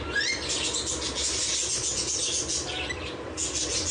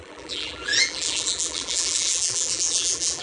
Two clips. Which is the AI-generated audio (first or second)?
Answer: second